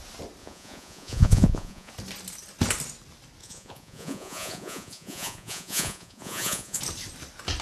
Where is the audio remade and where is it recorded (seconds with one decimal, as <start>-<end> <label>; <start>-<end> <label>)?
0.0-0.4 recorded; 0.4-1.9 remade; 1.9-3.4 recorded; 3.4-6.8 remade; 6.8-7.6 recorded